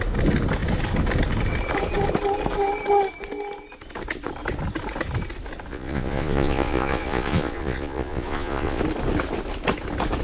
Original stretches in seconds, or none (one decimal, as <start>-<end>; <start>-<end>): 0.0-5.7; 8.8-10.2